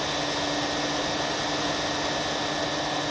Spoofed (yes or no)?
no